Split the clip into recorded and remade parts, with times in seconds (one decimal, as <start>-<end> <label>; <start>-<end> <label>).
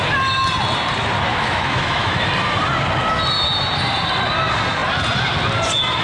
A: 0.0-1.3 recorded; 1.3-2.3 remade; 2.3-6.0 recorded